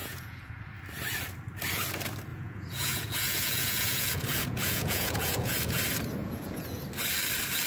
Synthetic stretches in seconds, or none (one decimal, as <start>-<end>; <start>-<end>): 0.0-0.7; 2.3-5.8; 6.2-6.8